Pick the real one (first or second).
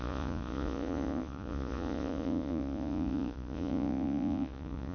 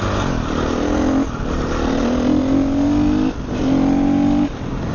second